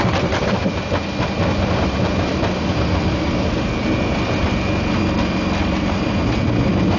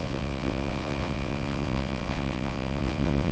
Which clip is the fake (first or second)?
second